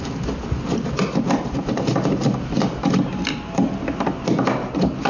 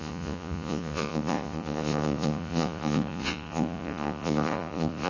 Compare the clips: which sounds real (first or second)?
first